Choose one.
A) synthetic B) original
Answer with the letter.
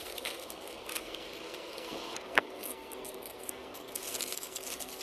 A